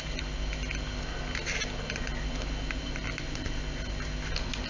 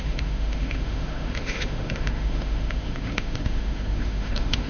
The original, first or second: first